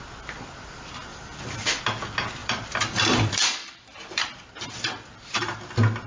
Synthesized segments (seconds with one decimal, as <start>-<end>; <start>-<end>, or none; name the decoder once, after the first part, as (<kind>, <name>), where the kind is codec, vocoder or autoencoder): 1.1-1.8 (vocoder, BigVGAN v2); 2.4-4.4